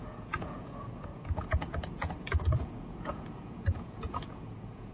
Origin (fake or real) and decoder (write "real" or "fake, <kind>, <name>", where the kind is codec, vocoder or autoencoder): fake, vocoder, Vocos